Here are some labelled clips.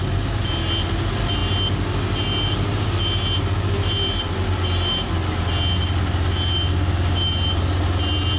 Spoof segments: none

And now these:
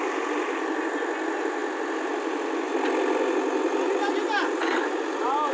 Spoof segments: none

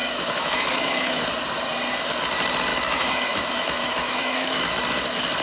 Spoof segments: 0.0-1.2 (autoencoder, DAC-VAE); 2.7-4.7

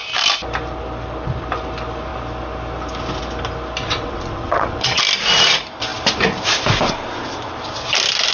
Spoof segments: 3.8-5.0 (vocoder, WaveNeXt)

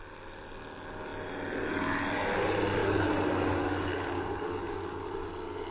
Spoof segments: 2.8-5.1 (codec, DAC)